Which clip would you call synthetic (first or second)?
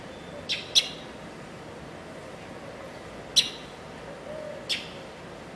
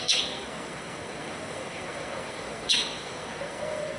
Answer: second